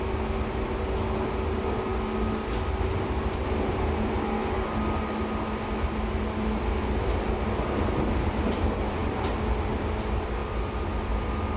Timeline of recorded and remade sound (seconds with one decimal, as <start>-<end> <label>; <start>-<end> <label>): 0.0-11.6 recorded